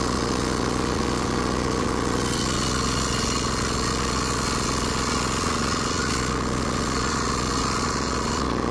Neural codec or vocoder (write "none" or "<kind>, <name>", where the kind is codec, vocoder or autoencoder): vocoder, Vocos